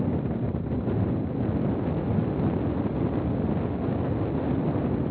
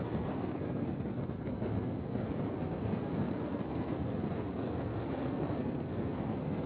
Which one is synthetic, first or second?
second